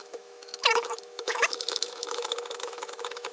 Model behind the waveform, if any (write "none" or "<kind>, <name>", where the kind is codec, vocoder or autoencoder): autoencoder, DAC-VAE